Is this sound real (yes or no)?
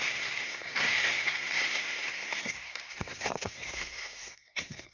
no